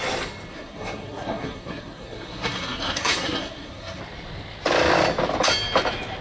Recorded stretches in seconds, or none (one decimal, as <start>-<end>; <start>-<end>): 0.0-0.5; 4.0-6.2